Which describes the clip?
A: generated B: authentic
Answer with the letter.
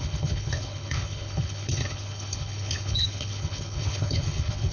A